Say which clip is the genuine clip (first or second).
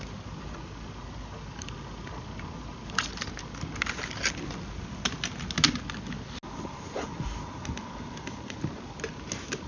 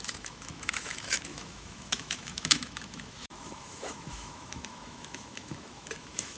first